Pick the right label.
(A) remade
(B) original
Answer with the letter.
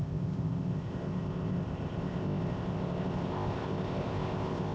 A